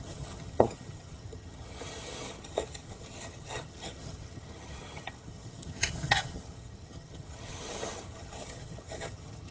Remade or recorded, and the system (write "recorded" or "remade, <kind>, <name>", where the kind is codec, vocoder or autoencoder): remade, vocoder, HiFi-GAN